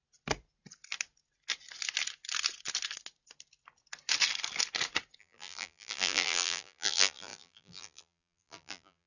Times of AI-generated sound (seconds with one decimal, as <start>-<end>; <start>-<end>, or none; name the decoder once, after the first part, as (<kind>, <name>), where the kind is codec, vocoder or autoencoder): 5.2-9.1 (vocoder, BigVGAN v2)